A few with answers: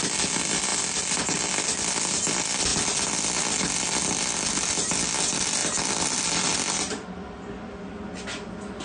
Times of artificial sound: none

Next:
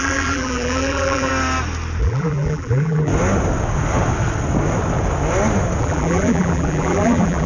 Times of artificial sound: 0.0-1.3 (vocoder, BigVGAN v2); 2.0-3.1; 5.8-7.5